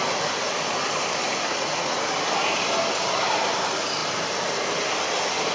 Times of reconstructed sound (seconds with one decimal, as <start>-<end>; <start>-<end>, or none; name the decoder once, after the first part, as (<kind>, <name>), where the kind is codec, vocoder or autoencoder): 1.2-1.9 (vocoder, Vocos)